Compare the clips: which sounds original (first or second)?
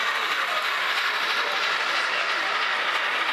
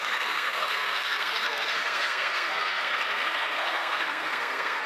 first